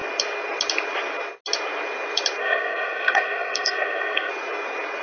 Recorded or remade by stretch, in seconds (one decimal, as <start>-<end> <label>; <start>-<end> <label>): 0.0-2.4 recorded; 2.4-4.3 remade; 4.3-5.0 recorded